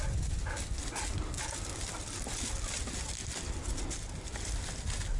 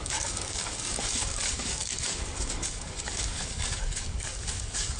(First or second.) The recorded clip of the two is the first